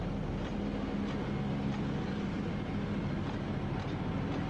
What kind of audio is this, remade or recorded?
recorded